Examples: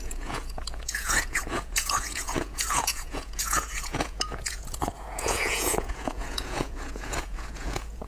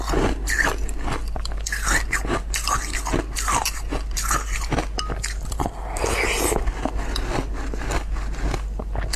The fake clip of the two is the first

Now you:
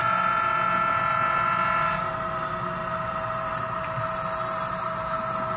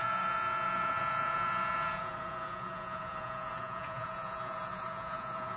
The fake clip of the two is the second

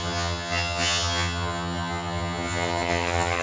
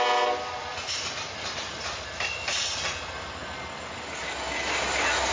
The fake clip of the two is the first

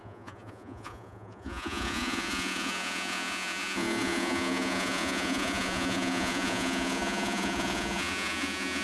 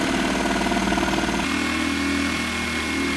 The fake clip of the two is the first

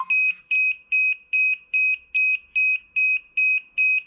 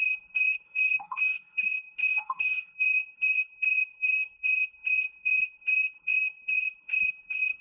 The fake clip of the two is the second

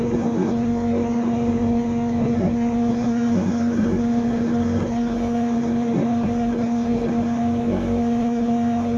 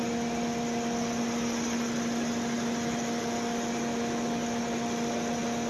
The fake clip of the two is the first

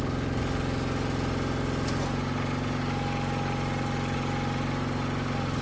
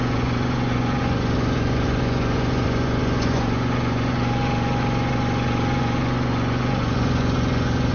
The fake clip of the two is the second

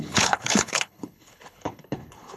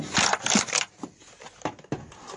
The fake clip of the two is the first